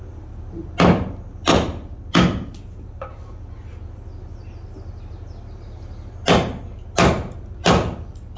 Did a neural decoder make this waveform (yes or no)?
no